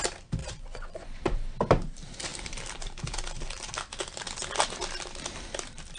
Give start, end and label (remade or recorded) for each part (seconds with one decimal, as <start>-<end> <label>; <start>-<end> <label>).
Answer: 0.0-0.4 recorded; 0.4-1.2 remade; 1.2-6.0 recorded